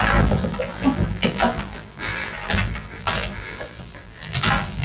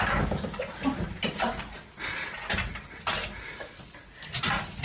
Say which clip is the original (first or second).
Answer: second